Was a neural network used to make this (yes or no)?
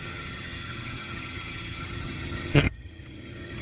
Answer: yes